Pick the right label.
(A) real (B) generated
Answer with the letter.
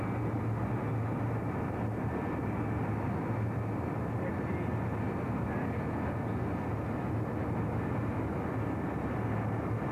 A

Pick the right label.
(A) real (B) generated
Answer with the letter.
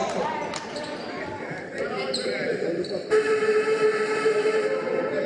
B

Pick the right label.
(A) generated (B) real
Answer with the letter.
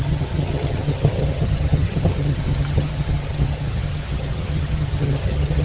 A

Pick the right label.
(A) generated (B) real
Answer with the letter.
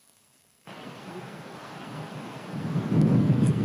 A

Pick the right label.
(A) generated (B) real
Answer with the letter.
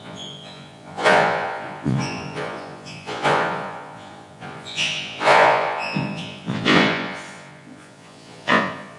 A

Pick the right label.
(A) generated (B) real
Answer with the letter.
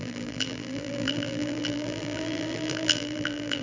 A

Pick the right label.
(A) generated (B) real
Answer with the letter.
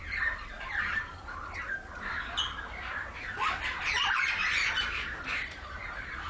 A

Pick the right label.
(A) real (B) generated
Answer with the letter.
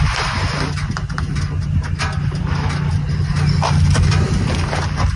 A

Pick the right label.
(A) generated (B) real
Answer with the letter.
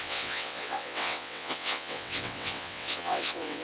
A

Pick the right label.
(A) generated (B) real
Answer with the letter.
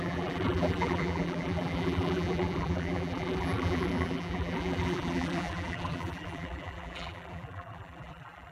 A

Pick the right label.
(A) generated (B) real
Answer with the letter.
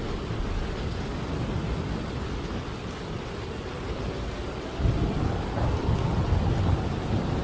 B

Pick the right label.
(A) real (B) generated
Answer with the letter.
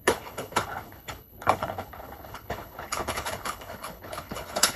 B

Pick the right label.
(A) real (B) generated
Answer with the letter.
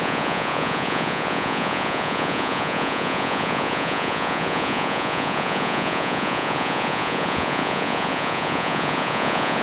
B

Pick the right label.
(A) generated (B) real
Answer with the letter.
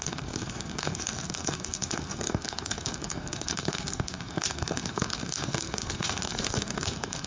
A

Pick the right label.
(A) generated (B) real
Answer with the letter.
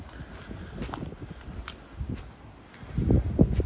B